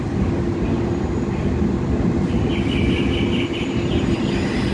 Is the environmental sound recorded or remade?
recorded